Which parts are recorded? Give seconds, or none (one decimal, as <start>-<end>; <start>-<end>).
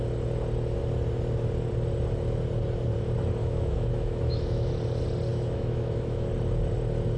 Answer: 0.0-3.4; 4.7-5.3; 6.3-7.2